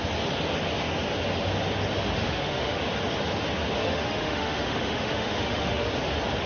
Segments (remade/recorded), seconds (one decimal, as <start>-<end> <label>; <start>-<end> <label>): 0.0-2.2 recorded; 2.2-2.8 remade; 2.8-3.8 recorded; 3.8-5.9 remade; 5.9-6.5 recorded